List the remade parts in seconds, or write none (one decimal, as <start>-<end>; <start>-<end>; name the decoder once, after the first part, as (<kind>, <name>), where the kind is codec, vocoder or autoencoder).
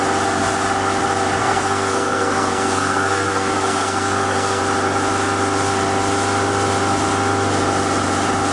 1.4-4.6 (codec, SNAC)